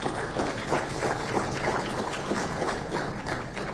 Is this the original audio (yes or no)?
no